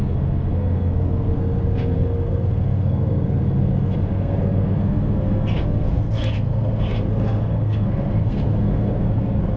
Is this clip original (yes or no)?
no